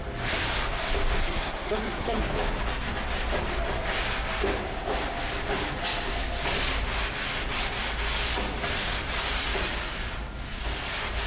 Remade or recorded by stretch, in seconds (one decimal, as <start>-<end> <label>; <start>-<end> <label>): 0.0-1.2 recorded; 1.2-2.3 remade; 2.3-11.3 recorded